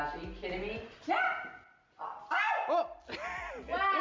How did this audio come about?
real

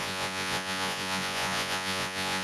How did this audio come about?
fake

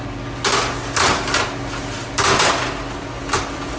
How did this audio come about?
real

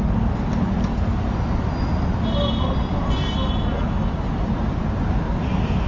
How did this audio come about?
real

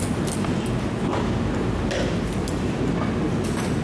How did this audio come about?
real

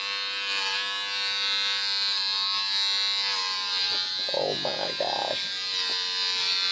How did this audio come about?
real